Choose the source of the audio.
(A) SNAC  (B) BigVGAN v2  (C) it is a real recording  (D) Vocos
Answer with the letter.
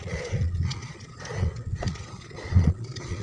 D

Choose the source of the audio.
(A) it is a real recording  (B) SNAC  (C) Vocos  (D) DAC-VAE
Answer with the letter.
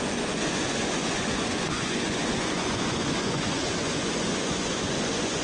C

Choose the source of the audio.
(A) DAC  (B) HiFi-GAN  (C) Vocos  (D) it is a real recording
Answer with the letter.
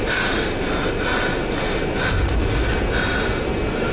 D